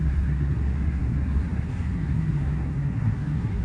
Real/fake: fake